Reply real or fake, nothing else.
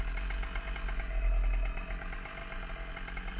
real